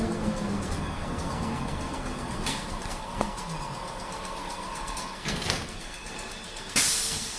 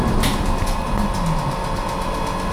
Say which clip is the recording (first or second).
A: second